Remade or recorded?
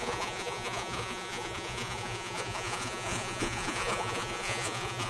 remade